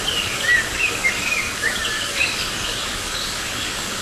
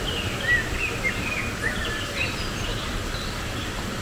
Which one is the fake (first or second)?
first